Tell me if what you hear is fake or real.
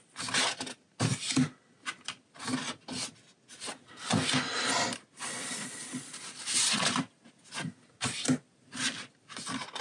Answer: real